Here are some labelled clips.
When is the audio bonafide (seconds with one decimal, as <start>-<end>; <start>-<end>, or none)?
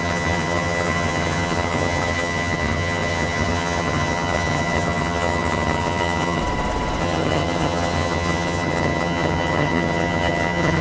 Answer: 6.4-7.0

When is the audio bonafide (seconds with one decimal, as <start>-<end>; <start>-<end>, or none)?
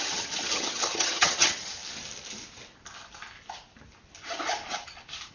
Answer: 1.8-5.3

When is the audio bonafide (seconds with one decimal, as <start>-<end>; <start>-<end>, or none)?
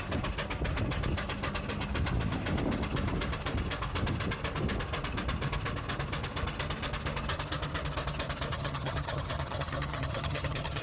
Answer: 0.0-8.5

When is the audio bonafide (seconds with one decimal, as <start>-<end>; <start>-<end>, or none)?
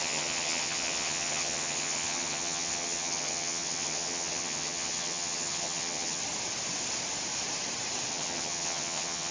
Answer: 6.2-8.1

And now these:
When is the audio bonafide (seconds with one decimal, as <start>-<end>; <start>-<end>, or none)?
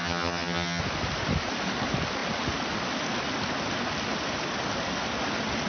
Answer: 0.8-5.7